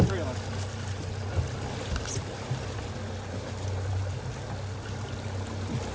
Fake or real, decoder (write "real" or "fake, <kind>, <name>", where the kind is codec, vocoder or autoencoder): real